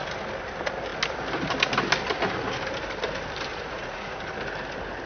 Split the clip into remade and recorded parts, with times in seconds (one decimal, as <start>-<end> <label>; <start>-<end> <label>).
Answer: 0.0-3.5 recorded; 3.5-4.2 remade; 4.2-5.1 recorded